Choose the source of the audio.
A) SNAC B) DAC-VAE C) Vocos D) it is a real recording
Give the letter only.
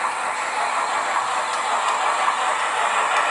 D